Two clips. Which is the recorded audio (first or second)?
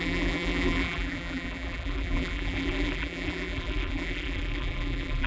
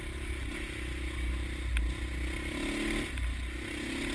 second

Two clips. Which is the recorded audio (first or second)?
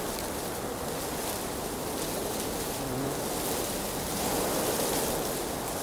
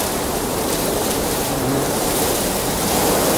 first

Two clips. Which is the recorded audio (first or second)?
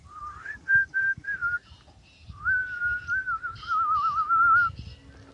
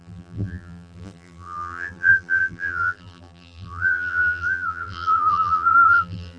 first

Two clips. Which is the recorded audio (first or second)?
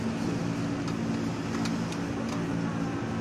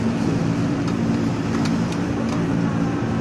first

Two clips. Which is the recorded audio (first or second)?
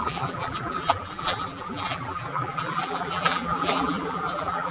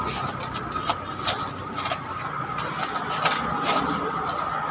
second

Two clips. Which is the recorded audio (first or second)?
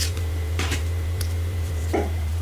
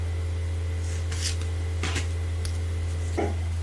second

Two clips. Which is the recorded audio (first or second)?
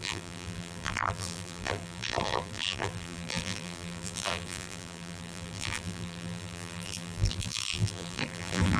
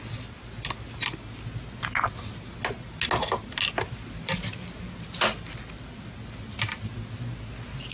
second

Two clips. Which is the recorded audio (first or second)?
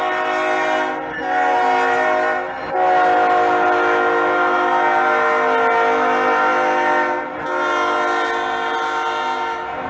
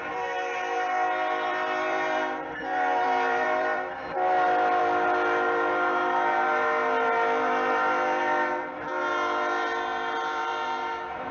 first